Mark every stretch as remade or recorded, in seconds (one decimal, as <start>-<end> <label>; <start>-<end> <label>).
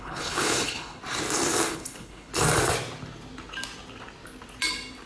0.0-1.0 remade; 1.0-1.7 recorded; 1.7-2.3 remade; 2.3-5.1 recorded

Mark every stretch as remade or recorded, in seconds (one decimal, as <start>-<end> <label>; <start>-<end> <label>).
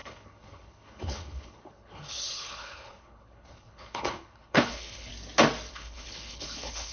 0.0-5.1 remade; 5.1-5.7 recorded; 5.7-6.9 remade